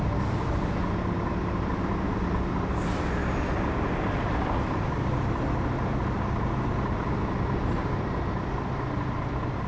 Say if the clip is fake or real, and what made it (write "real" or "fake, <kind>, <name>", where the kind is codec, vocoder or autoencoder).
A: real